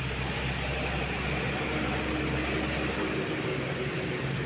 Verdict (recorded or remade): recorded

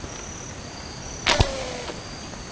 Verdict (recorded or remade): recorded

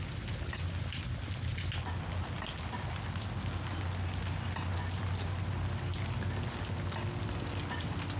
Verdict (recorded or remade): recorded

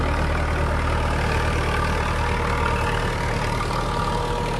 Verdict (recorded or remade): recorded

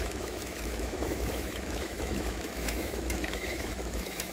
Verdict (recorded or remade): remade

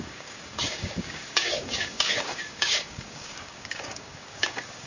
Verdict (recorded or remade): remade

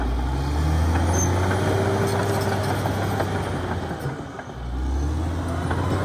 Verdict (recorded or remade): recorded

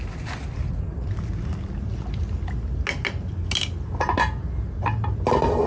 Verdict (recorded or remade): recorded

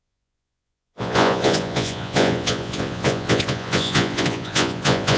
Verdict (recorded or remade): remade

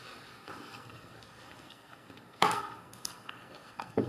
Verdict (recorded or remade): remade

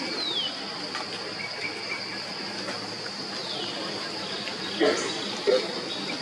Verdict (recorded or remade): recorded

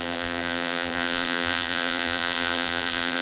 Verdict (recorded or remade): remade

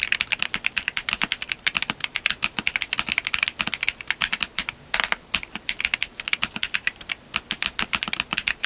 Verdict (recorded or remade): recorded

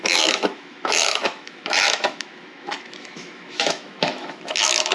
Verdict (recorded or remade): remade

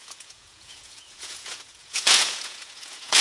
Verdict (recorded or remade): remade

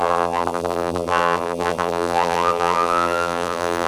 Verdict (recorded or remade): remade